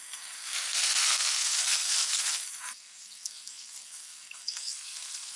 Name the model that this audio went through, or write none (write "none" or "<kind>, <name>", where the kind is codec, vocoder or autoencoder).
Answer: codec, SNAC